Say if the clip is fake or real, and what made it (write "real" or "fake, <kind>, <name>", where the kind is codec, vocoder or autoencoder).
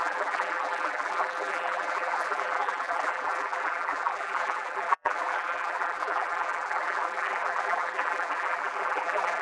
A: fake, vocoder, BigVGAN v2